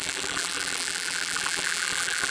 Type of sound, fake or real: fake